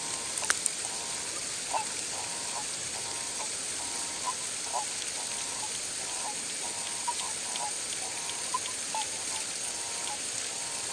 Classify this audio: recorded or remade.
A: recorded